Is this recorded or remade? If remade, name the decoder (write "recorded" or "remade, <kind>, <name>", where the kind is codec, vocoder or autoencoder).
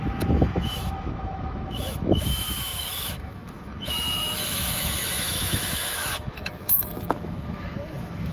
remade, autoencoder, DAC-VAE